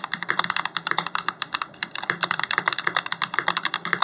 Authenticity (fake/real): fake